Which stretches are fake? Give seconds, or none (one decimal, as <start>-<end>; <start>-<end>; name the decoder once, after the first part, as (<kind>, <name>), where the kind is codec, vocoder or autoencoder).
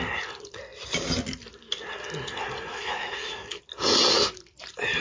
2.7-3.6 (autoencoder, DAC-VAE)